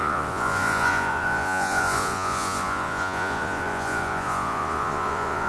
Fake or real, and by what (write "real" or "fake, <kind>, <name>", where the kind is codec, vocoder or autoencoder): fake, vocoder, Vocos